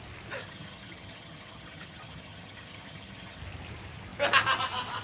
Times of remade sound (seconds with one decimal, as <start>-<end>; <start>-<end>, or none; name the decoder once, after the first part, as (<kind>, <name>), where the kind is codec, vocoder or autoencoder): 0.4-3.4 (vocoder, HiFi-GAN)